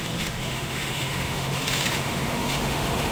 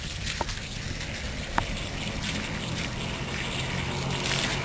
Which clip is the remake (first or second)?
first